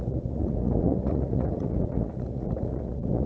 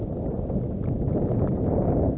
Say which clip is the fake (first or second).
first